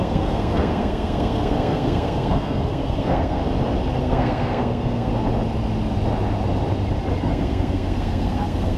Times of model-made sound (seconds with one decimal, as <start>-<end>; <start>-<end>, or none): 0.0-3.4; 4.0-5.1; 7.2-8.8